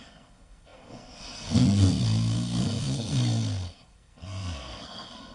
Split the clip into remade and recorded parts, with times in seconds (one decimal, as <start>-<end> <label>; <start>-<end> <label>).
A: 0.0-5.3 remade